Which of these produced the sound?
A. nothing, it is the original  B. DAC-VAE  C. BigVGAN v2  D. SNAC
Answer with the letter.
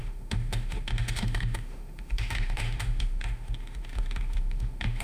B